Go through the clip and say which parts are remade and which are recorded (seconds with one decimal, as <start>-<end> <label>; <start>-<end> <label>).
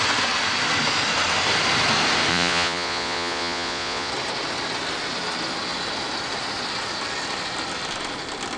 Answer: 0.0-2.3 recorded; 2.3-4.1 remade; 4.1-8.6 recorded